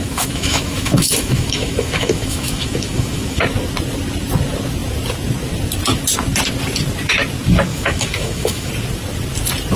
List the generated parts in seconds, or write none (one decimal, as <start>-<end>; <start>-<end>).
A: 0.0-3.4; 7.7-8.7